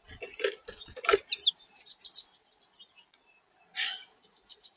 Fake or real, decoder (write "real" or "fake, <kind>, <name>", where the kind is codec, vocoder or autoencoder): real